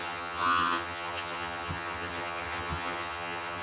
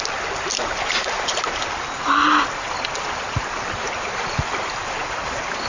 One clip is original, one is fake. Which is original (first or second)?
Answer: second